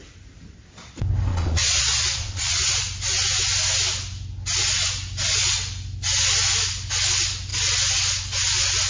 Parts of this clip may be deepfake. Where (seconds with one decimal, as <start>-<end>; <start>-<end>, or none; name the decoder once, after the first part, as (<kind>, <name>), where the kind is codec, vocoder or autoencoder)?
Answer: 1.3-2.7 (vocoder, Vocos)